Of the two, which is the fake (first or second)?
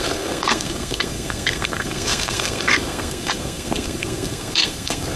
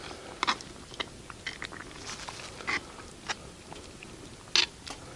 first